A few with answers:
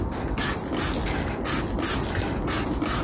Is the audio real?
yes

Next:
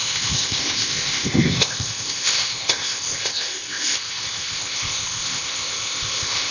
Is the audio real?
no